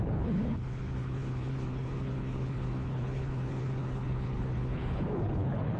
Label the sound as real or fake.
fake